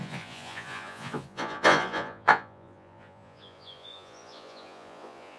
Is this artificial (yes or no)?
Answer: yes